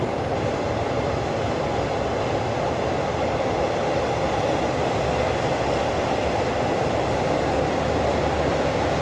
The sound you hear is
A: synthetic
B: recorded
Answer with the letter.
B